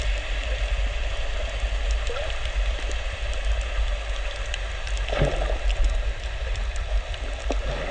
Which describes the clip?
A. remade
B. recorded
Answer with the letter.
B